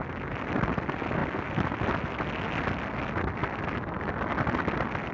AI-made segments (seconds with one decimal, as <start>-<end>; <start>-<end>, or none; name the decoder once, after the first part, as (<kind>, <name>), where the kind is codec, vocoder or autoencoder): none